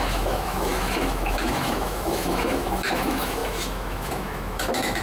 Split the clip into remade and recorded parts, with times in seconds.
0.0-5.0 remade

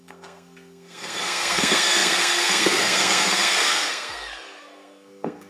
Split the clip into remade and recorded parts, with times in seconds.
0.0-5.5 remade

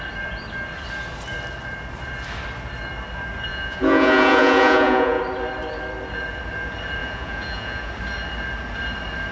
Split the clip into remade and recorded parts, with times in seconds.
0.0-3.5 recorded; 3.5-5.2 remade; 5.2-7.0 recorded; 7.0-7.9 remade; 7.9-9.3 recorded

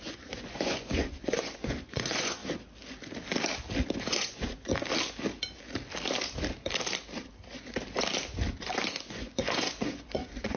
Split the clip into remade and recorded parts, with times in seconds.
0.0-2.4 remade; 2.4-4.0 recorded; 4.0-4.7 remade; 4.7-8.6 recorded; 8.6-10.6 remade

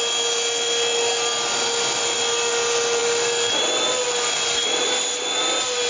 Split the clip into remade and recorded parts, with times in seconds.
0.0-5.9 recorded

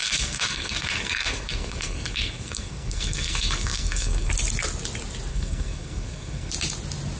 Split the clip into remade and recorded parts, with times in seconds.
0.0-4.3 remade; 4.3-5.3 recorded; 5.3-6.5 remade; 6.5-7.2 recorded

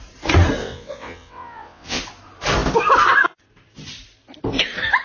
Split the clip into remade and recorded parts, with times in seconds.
0.0-0.6 recorded; 0.6-2.0 remade; 2.0-5.0 recorded

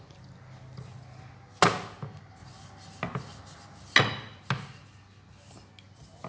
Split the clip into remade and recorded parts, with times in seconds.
0.0-6.3 recorded